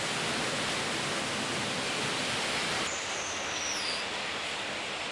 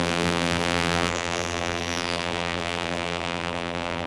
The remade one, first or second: second